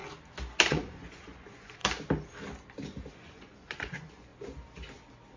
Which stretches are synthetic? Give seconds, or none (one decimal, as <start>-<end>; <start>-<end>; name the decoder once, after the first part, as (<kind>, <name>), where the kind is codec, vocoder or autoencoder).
0.7-1.8 (vocoder, Vocos); 3.1-4.3